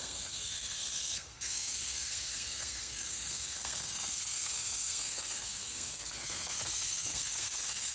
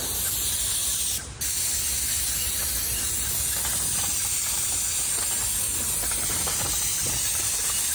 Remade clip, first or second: first